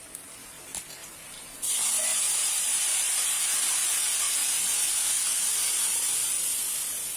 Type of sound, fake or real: real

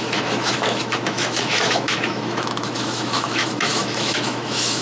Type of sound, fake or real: fake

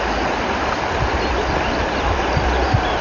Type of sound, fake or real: real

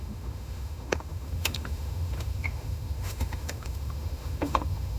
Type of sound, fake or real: fake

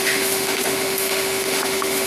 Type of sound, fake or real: fake